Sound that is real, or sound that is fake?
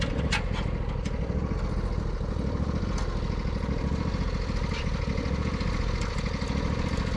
real